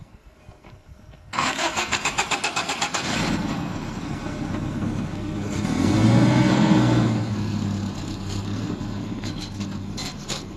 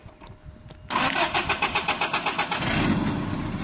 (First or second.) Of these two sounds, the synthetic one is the first